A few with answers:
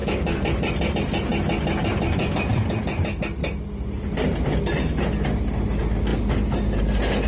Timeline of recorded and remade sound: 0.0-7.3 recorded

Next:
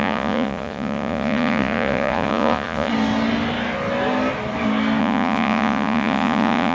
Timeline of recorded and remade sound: 0.0-2.9 remade; 2.9-5.0 recorded; 5.0-6.7 remade

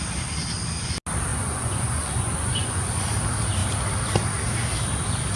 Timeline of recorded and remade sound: 0.0-1.3 recorded; 1.3-3.0 remade; 3.0-5.4 recorded

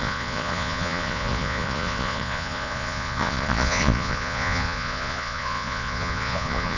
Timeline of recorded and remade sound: 0.0-6.8 remade

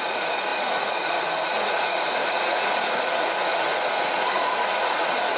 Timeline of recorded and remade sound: 0.0-5.4 remade